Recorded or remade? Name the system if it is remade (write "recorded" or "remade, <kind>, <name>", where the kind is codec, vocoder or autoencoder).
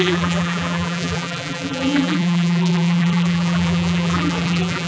remade, vocoder, BigVGAN v2